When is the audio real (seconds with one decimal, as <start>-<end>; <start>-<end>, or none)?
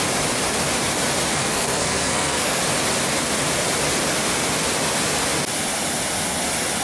0.0-1.3; 2.6-6.8